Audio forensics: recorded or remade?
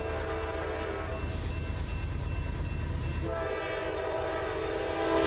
recorded